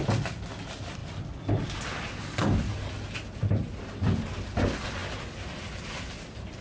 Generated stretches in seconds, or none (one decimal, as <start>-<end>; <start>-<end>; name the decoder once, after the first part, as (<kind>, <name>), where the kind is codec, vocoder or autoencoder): none